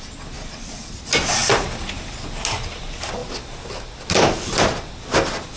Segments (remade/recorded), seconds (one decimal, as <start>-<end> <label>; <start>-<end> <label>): 0.0-5.6 recorded